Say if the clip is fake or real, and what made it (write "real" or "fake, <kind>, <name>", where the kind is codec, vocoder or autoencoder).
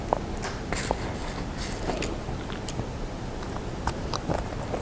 real